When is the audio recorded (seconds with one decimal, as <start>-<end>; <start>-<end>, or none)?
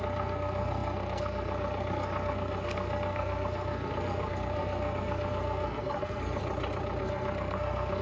6.4-7.0